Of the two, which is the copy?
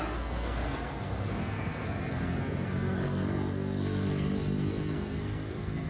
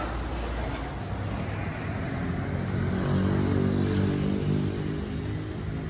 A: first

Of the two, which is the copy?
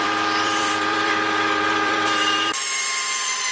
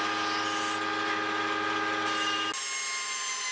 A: first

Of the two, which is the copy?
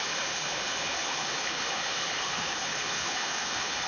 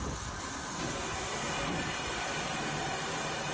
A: first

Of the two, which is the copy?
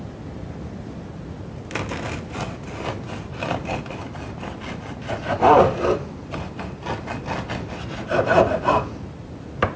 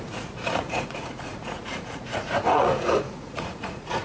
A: second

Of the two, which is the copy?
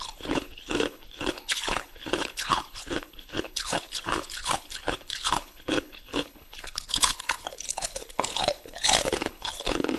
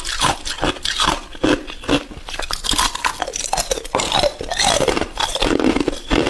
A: first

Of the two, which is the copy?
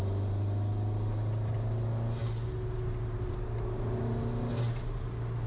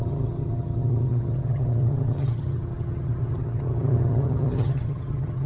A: second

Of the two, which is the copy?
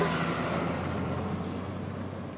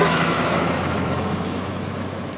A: second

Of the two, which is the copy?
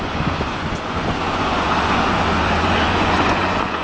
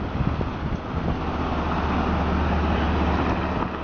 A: first